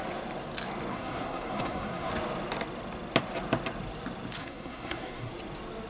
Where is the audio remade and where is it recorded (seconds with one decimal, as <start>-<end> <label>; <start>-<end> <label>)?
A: 0.0-0.9 recorded; 0.9-2.1 remade; 2.1-4.4 recorded; 4.4-5.3 remade; 5.3-5.9 recorded